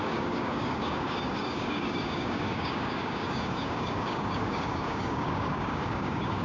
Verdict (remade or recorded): remade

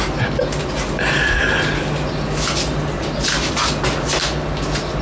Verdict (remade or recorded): recorded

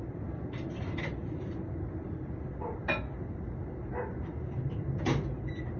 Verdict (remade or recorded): recorded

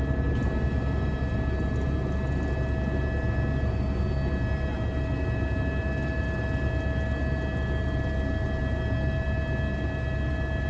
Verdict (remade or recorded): recorded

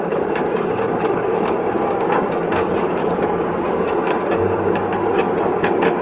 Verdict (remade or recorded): remade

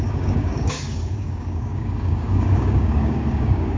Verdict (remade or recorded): remade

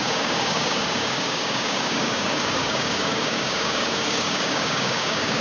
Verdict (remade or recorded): remade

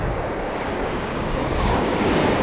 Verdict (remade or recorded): remade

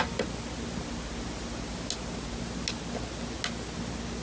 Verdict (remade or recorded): recorded